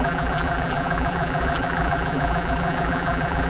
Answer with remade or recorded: remade